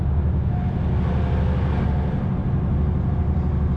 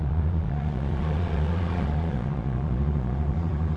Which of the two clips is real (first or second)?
first